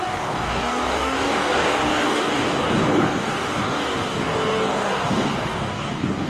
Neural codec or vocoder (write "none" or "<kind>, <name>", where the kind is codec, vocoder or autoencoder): codec, DAC